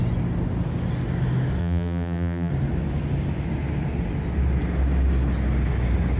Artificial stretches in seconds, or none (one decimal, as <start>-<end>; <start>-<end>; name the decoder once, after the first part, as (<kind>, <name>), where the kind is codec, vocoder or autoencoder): 1.6-2.5 (vocoder, BigVGAN v2)